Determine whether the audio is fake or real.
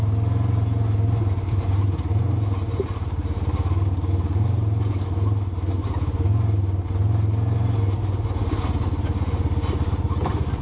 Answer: real